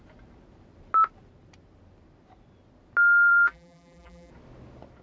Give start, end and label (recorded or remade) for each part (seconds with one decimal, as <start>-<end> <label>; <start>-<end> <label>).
0.0-3.3 recorded; 3.3-4.3 remade; 4.3-5.0 recorded